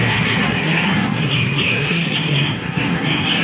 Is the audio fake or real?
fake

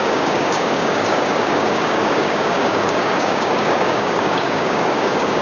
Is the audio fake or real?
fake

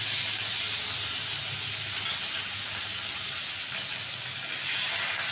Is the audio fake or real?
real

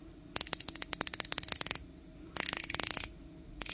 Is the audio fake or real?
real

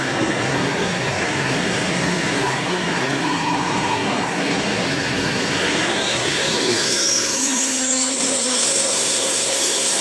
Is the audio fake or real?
fake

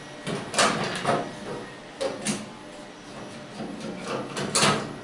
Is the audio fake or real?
real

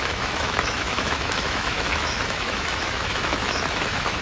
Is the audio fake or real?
fake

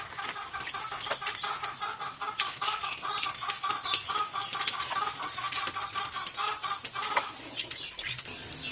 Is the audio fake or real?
real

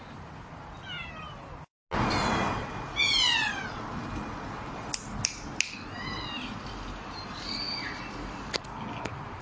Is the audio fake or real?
real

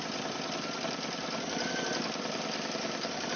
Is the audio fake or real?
fake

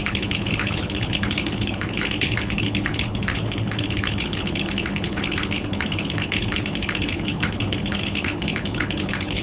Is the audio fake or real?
fake